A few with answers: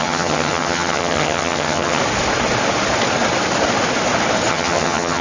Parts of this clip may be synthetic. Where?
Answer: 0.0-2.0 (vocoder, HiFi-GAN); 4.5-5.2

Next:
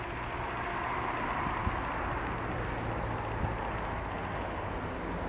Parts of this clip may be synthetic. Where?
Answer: none

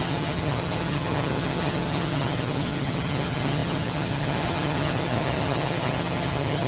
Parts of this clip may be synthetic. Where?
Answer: 0.0-6.7 (vocoder, HiFi-GAN)

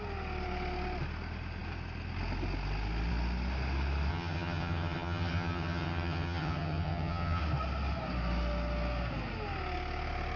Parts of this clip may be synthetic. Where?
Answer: 4.1-7.4 (vocoder, HiFi-GAN)

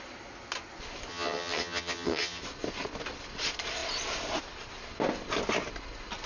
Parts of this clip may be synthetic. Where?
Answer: 1.1-2.4 (vocoder, HiFi-GAN)

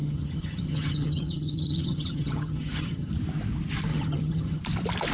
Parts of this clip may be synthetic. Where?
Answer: 0.0-3.1 (vocoder, HiFi-GAN); 3.9-4.6

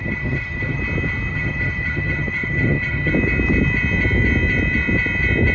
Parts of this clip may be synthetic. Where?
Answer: 0.0-0.8 (vocoder, HiFi-GAN); 1.3-3.1

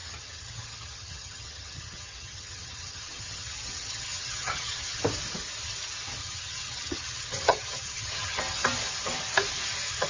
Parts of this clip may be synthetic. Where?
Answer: 0.0-5.0 (vocoder, HiFi-GAN); 6.2-8.4